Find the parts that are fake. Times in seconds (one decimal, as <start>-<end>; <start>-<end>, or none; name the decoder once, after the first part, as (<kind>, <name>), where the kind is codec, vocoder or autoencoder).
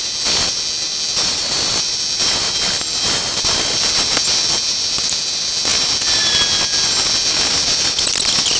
none